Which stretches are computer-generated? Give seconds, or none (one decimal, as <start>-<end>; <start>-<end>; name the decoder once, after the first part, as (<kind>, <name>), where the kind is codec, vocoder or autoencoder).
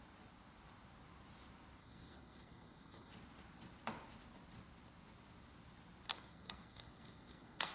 1.8-3.1 (codec, SNAC); 6.1-7.7